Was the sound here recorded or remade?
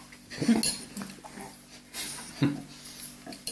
recorded